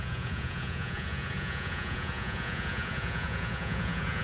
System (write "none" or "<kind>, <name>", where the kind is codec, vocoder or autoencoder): vocoder, Vocos